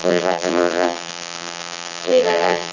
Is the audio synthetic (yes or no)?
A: yes